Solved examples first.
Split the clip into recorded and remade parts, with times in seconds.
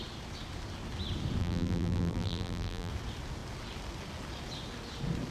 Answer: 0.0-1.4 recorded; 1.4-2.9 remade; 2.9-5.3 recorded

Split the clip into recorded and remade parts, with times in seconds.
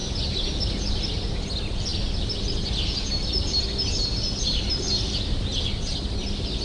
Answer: 0.0-6.6 recorded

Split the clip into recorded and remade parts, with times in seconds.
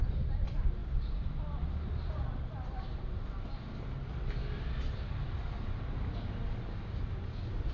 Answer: 0.0-7.7 recorded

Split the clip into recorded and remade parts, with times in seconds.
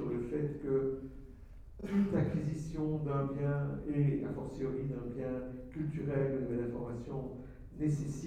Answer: 0.0-8.3 recorded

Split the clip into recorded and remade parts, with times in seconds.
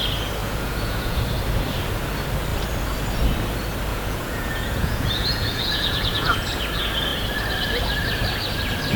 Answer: 0.0-0.4 recorded; 0.4-1.2 remade; 1.2-3.9 recorded; 3.9-6.5 remade; 6.5-9.0 recorded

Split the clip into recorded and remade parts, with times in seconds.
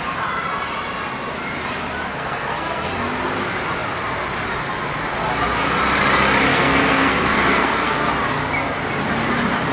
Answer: 0.0-2.1 recorded; 2.1-2.9 remade; 2.9-6.5 recorded; 6.5-8.1 remade; 8.1-9.7 recorded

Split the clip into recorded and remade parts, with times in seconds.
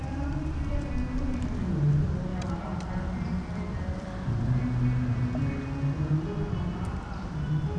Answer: 0.0-0.9 remade; 0.9-2.3 recorded; 2.3-4.6 remade; 4.6-7.8 recorded